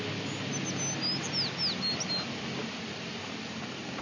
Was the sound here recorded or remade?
recorded